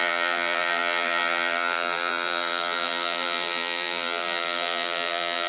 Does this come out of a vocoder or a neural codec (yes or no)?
yes